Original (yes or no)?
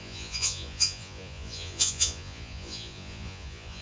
no